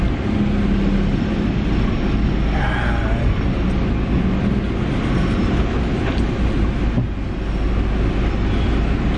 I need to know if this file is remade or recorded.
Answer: recorded